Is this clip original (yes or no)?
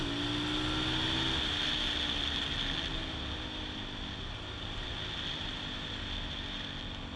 yes